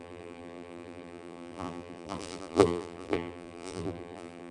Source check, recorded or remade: remade